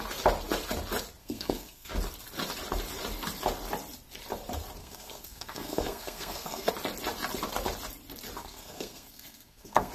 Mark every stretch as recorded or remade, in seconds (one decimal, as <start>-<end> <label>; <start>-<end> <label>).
0.0-1.2 recorded; 1.2-1.9 remade; 1.9-4.8 recorded; 4.8-6.7 remade; 6.7-8.4 recorded; 8.4-9.9 remade

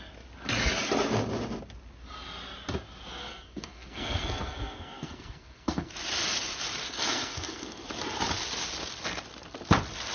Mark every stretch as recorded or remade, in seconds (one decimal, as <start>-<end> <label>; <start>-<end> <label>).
0.0-3.2 recorded; 3.2-5.9 remade; 5.9-6.8 recorded; 6.8-7.8 remade; 7.8-10.1 recorded

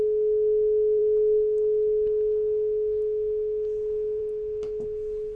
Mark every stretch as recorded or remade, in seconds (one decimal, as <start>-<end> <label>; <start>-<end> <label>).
0.0-5.4 recorded

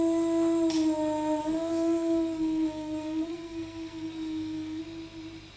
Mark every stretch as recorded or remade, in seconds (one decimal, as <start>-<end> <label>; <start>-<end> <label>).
0.0-1.4 recorded; 1.4-4.8 remade; 4.8-5.6 recorded

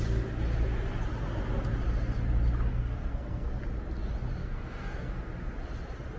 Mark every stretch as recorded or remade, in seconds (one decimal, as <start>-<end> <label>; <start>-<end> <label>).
0.0-2.7 recorded; 2.7-3.5 remade; 3.5-4.4 recorded; 4.4-5.3 remade; 5.3-6.2 recorded

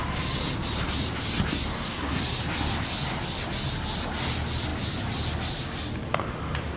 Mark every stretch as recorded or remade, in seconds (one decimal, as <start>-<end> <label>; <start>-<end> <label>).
0.0-1.7 recorded; 1.7-2.2 remade; 2.2-6.8 recorded